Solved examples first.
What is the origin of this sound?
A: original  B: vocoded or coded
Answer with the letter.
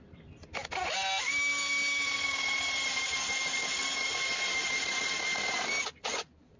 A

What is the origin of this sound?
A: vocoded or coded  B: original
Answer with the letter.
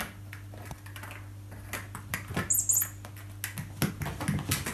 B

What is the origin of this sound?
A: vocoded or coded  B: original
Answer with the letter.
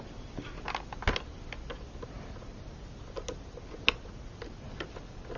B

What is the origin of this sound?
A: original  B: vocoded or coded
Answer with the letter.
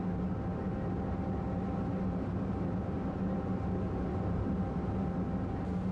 A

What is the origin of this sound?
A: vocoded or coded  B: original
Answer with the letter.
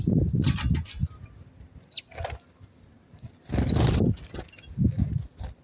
B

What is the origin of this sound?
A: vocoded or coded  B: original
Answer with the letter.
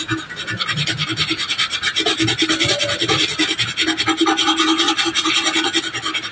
B